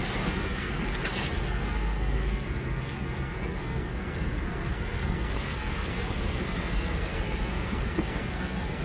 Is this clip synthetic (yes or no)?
yes